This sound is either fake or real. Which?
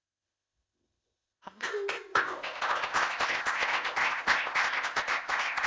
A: fake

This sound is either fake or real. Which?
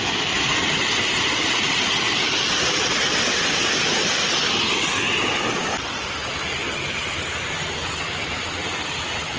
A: real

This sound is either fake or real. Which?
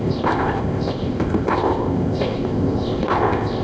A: fake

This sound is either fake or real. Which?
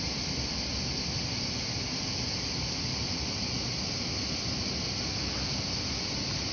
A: real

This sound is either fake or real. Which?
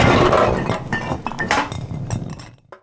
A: real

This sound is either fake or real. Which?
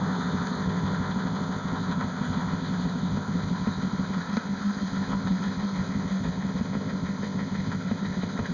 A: fake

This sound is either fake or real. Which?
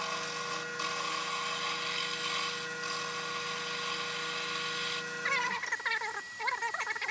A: real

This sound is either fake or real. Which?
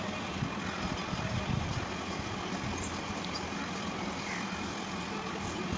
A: real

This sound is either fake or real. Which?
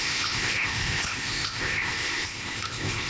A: fake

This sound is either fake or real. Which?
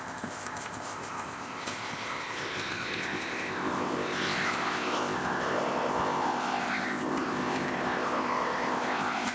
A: fake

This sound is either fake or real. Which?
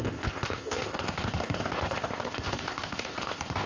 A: fake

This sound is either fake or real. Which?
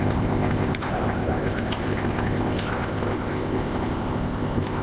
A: fake